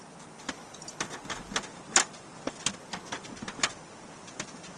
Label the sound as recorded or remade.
recorded